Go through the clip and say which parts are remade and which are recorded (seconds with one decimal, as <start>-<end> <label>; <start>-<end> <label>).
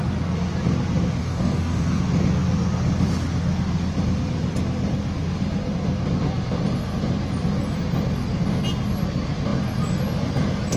0.0-1.2 recorded; 1.2-2.0 remade; 2.0-10.8 recorded